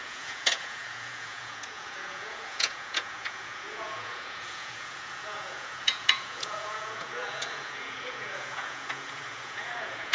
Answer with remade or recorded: remade